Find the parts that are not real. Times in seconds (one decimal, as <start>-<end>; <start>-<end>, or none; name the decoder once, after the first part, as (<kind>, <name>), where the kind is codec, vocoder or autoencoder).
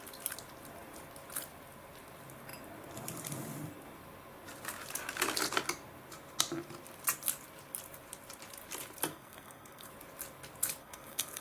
9.1-9.9 (codec, SNAC); 10.8-11.4